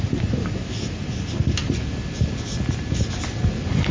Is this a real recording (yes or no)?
yes